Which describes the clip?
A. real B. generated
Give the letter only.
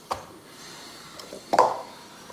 B